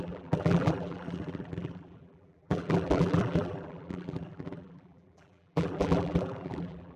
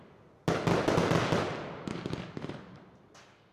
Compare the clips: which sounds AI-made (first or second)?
first